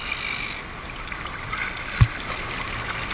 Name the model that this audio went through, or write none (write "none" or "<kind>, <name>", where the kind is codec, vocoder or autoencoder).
none